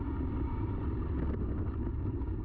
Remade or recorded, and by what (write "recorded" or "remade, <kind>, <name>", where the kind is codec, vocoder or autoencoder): recorded